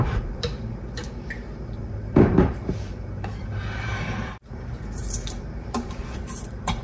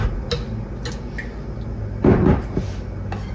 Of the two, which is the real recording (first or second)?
second